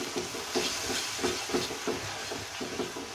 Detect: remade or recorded recorded